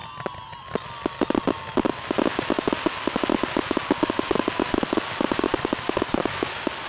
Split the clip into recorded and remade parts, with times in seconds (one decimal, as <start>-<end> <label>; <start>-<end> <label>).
0.0-6.9 recorded